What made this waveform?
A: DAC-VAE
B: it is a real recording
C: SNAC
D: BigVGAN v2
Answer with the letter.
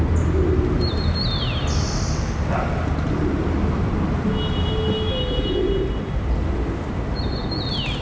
B